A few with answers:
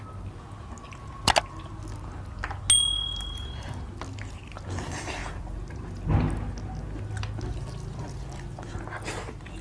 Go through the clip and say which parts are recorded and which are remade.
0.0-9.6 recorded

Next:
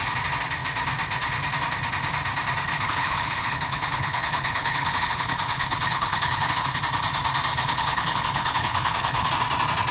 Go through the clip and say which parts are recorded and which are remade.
0.0-2.7 recorded; 2.7-6.8 remade; 6.8-7.5 recorded; 7.5-9.3 remade; 9.3-9.9 recorded

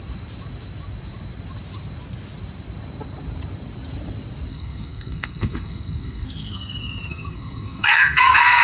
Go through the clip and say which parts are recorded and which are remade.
0.0-4.5 recorded; 4.5-8.6 remade

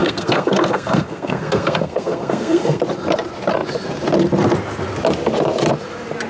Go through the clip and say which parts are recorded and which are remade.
0.0-2.8 remade; 2.8-6.3 recorded

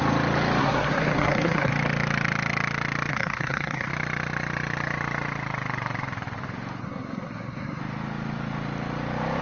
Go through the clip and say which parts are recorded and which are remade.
0.0-0.6 recorded; 0.6-1.7 remade; 1.7-3.1 recorded; 3.1-3.9 remade; 3.9-6.8 recorded; 6.8-7.8 remade; 7.8-9.4 recorded